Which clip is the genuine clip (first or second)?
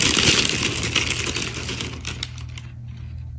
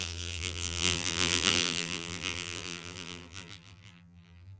first